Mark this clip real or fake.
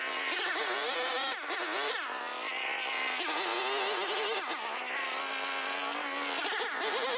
real